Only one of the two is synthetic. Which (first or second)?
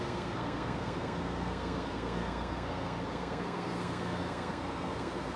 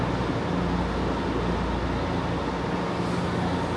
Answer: first